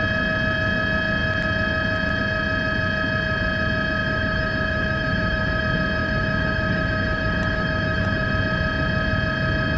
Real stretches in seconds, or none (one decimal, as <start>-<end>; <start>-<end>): 0.0-4.0; 5.6-6.0; 8.3-9.8